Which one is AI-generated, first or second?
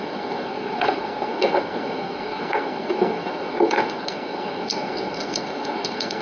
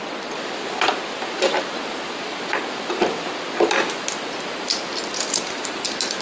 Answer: first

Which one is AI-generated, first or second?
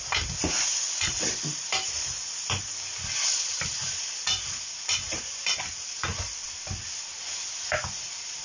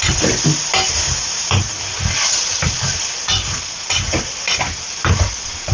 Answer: first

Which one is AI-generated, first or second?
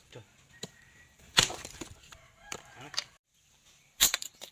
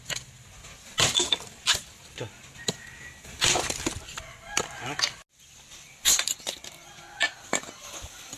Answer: first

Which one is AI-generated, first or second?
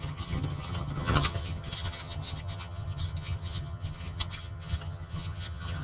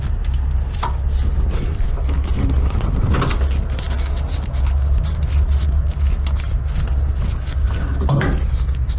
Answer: first